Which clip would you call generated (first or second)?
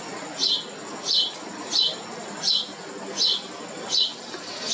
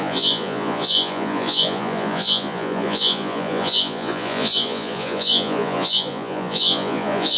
second